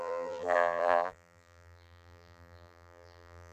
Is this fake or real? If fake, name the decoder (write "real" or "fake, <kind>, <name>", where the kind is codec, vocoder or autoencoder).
fake, vocoder, BigVGAN v2